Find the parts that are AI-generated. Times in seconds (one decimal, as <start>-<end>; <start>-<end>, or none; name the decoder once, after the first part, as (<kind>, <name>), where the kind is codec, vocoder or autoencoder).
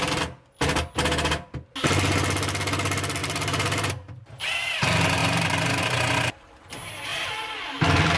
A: 3.2-3.9 (vocoder, BigVGAN v2)